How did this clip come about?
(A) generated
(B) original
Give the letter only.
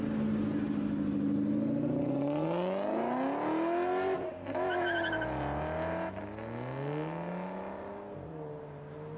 B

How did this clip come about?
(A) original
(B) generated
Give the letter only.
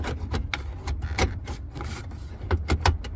A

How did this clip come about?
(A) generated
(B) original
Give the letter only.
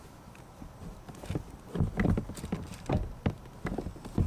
B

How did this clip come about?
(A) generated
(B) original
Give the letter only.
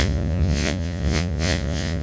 A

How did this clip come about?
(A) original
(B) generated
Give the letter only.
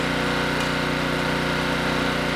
A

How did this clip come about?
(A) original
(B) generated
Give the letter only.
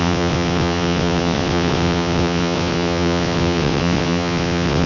B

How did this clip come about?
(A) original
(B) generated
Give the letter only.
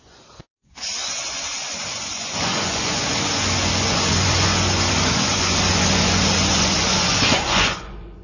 B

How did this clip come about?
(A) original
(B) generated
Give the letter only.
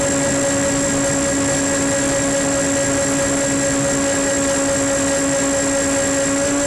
A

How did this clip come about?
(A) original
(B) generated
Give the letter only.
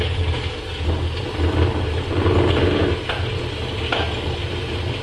A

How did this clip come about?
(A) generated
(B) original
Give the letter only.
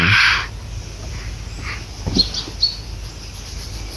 B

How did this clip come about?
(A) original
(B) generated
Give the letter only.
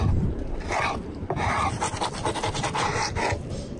A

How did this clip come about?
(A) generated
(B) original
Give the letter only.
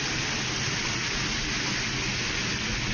B